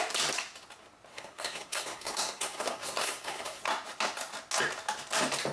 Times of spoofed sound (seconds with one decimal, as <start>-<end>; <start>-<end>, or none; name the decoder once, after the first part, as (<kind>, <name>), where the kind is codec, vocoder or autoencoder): 1.1-3.6 (codec, SNAC)